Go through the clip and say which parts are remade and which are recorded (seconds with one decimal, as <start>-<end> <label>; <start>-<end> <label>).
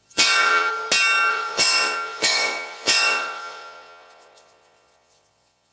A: 0.0-0.7 remade; 0.7-1.3 recorded; 1.3-5.7 remade